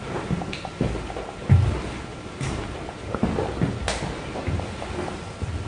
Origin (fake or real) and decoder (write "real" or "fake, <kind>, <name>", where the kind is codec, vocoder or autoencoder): real